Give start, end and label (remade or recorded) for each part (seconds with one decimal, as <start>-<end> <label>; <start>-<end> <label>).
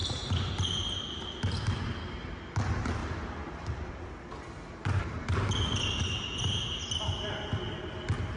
0.0-3.0 recorded; 3.0-5.0 remade; 5.0-8.4 recorded